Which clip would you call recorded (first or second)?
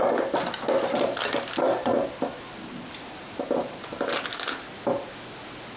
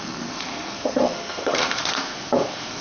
first